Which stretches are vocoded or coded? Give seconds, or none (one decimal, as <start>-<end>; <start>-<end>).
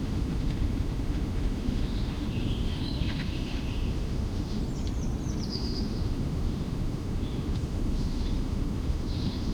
0.0-4.6; 5.5-9.5